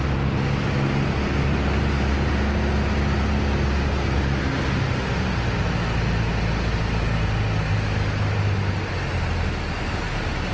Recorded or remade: recorded